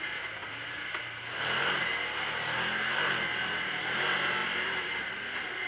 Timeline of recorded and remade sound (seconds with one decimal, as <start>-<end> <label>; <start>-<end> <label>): 0.0-5.7 recorded